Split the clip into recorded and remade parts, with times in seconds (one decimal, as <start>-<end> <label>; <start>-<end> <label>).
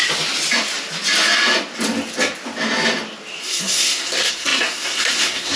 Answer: 0.0-3.4 recorded; 3.4-5.6 remade